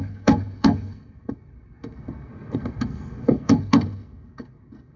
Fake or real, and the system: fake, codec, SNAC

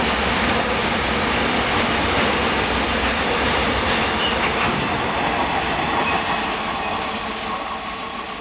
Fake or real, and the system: real